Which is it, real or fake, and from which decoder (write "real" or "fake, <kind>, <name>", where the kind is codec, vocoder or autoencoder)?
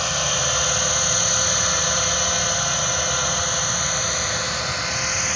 real